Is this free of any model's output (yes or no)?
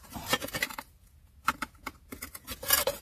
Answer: no